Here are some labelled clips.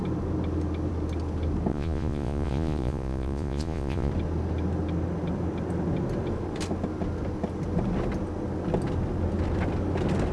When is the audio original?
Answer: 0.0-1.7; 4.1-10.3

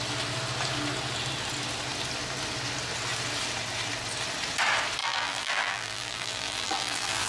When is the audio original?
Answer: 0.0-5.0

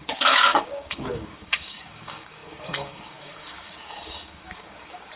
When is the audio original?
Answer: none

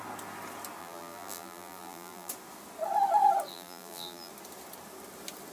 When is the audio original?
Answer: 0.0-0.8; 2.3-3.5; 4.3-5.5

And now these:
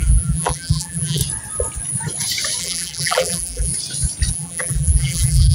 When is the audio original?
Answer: 1.2-2.6; 3.7-4.3

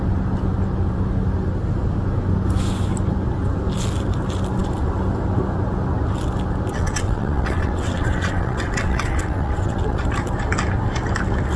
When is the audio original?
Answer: 0.0-6.7; 10.0-11.6

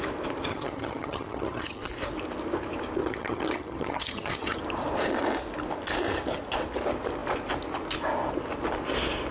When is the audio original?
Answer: 0.0-0.5; 1.9-3.0; 4.6-9.3